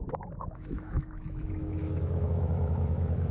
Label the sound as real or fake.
fake